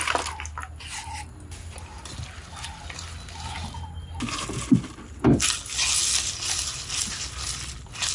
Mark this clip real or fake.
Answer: real